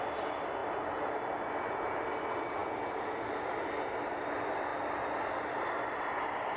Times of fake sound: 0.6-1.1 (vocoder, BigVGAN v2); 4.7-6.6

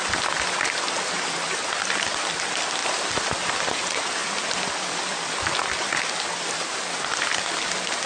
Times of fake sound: 2.8-3.5 (vocoder, BigVGAN v2); 4.2-5.7

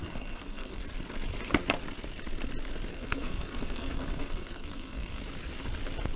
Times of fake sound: 0.0-0.8 (codec, SNAC); 2.9-5.2

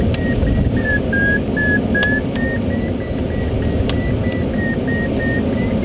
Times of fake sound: none